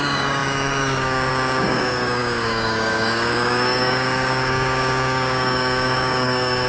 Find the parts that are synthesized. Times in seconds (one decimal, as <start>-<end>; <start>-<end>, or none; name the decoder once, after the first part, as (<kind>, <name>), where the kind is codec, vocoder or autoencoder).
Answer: 0.0-6.7 (codec, DAC)

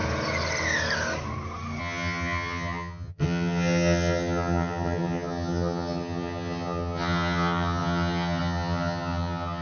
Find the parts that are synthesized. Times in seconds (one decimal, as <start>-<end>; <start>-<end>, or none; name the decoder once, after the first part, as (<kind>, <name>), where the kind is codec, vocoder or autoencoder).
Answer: 1.8-9.6 (vocoder, HiFi-GAN)

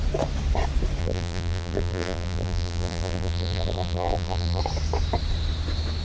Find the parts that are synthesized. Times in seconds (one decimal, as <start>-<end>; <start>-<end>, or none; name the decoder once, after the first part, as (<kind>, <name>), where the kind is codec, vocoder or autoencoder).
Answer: 1.0-4.6 (vocoder, BigVGAN v2)

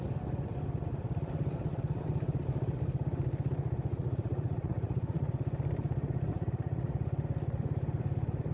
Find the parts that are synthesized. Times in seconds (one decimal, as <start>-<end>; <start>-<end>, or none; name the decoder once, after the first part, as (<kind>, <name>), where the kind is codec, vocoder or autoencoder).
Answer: 3.9-5.3 (vocoder, Vocos); 6.3-6.9

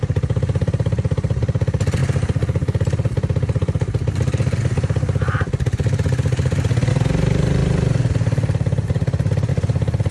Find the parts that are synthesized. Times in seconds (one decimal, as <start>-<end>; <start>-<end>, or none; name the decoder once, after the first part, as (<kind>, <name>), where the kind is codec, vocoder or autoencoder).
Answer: none

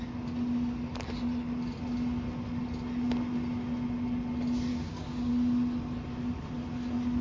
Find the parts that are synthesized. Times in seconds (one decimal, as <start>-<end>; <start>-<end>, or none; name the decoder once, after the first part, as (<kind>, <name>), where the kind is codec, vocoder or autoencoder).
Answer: 4.7-5.3 (codec, DAC)

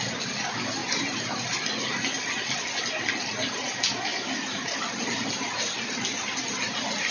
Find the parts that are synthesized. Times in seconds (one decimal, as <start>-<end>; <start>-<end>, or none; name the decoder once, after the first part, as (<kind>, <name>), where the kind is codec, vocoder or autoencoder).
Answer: 0.8-1.8 (vocoder, BigVGAN v2); 4.1-4.8